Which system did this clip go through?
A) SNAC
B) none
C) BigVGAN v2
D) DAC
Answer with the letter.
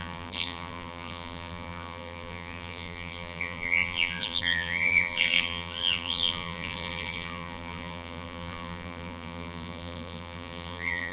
C